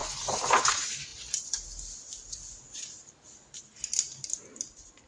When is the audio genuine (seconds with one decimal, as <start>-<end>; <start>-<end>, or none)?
0.0-5.1

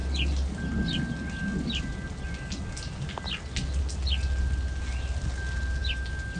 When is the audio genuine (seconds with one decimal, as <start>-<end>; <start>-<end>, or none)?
0.0-6.4

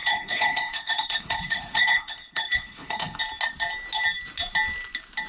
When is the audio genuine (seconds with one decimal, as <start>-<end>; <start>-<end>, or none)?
3.2-5.3

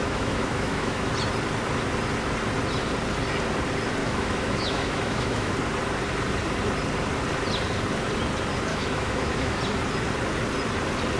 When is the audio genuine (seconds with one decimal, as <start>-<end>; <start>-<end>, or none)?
1.1-4.0; 5.5-8.7; 9.6-11.2

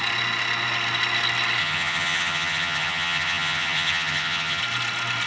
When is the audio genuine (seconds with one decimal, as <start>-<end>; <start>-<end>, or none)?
0.0-1.6; 4.6-5.3

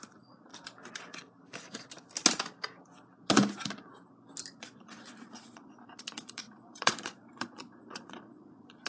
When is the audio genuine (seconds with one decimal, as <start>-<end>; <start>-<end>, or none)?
0.5-4.6

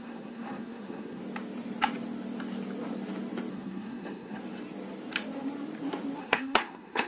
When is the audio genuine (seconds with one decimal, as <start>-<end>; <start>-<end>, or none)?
1.2-3.5; 4.4-6.2

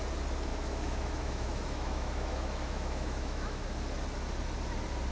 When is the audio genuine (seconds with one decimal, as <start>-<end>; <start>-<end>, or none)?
0.0-0.5; 3.6-5.1